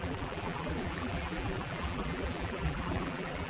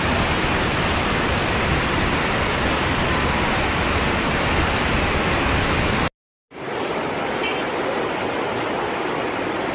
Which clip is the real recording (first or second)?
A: second